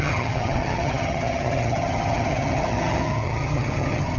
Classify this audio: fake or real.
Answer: fake